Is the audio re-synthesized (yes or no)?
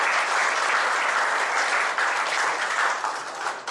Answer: no